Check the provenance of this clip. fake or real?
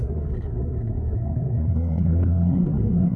fake